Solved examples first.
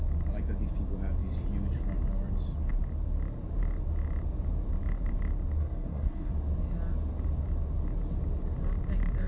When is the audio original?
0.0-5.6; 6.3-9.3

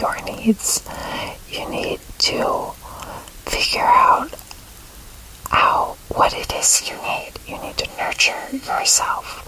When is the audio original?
0.0-6.4; 7.3-7.9; 9.0-9.5

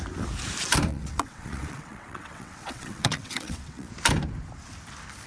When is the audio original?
0.0-0.9; 3.9-5.3

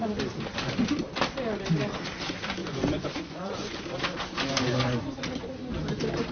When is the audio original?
0.0-2.6; 3.8-6.3

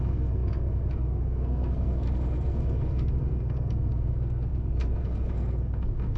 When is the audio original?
none

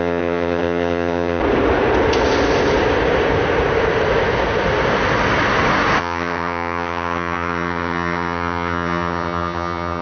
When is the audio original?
1.4-6.0

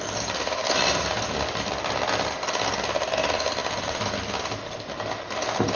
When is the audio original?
0.0-5.7